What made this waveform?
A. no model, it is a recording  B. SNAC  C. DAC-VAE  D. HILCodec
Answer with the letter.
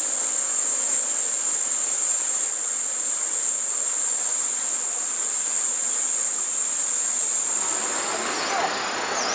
A